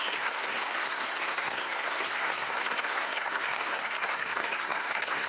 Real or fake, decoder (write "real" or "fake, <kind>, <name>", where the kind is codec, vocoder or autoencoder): fake, codec, SNAC